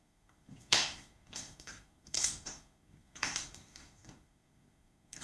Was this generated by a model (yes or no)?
yes